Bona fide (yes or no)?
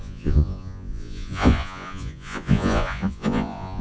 no